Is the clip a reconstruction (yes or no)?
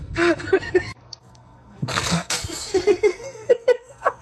yes